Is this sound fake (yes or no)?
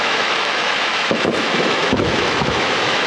yes